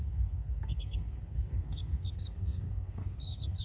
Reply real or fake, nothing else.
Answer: fake